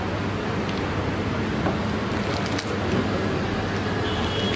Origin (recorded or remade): recorded